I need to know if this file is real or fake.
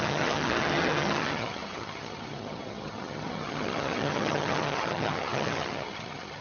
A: fake